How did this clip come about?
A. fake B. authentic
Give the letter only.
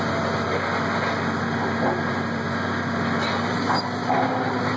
B